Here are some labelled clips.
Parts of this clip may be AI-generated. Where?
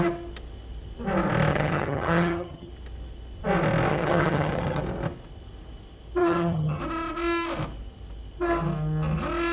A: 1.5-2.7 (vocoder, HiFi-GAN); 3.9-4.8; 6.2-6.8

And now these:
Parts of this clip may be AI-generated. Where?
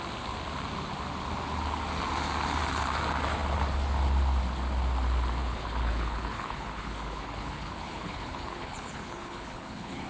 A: 5.4-10.1 (codec, HILCodec)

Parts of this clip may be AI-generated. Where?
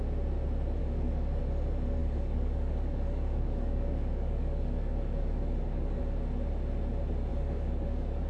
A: 0.8-1.4 (codec, DAC); 2.0-6.0; 7.3-8.3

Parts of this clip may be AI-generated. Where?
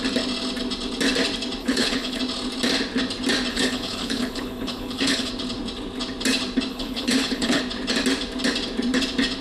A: 1.6-2.2 (codec, HILCodec); 3.5-5.3; 6.7-7.6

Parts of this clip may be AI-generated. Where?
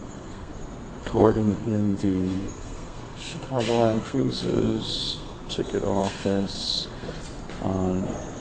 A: 0.0-0.5 (codec, SNAC); 1.0-5.6; 6.0-7.1